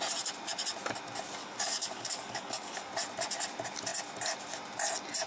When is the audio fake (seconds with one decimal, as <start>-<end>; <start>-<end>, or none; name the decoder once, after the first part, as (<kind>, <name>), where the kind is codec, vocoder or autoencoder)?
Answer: 1.4-2.9 (codec, DAC)